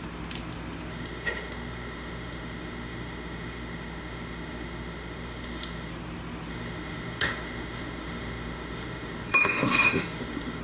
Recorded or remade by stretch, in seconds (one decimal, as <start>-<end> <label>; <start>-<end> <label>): 0.0-0.9 recorded; 0.9-5.9 remade; 5.9-6.5 recorded; 6.5-10.6 remade